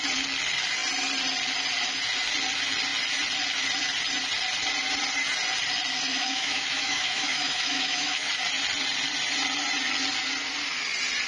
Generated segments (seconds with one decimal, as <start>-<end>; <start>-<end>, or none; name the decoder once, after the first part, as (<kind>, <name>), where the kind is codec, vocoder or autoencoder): 6.1-8.3 (autoencoder, DAC-VAE)